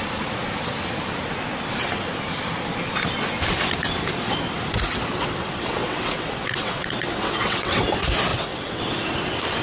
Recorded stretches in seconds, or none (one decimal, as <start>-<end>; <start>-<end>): 0.0-5.1; 7.8-8.3; 8.8-9.6